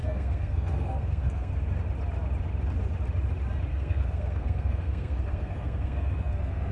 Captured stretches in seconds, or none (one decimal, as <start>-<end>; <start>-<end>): 1.5-3.7